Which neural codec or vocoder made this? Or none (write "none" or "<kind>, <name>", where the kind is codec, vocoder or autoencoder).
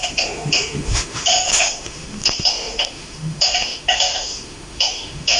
autoencoder, DAC-VAE